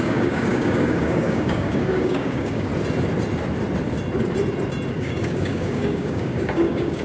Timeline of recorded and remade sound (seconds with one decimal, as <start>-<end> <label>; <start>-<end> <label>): 0.0-2.7 remade; 2.7-4.9 recorded; 4.9-7.0 remade